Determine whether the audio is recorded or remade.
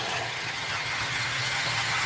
remade